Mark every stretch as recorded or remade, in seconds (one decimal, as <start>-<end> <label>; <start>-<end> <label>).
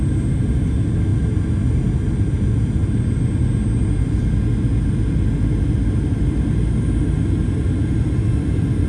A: 0.0-8.9 recorded